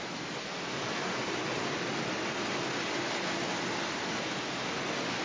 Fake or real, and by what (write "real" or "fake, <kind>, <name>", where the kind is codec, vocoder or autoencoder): real